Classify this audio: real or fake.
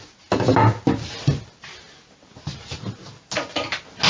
real